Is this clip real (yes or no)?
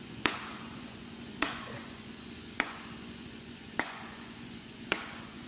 no